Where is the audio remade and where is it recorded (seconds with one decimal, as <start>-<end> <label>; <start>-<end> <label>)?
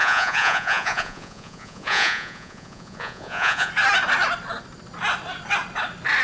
0.0-3.7 remade; 3.7-6.2 recorded